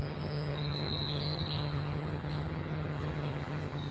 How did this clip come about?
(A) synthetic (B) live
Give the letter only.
A